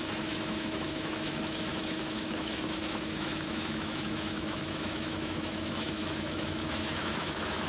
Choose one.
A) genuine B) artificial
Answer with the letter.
B